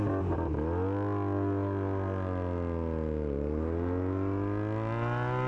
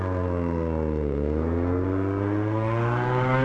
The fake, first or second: second